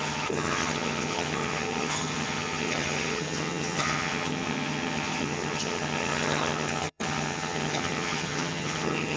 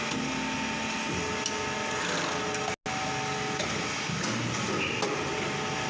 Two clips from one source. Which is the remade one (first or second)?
first